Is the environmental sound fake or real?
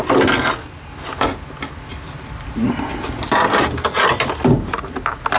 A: real